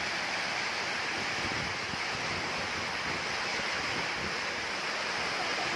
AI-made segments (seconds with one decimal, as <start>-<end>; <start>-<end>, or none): none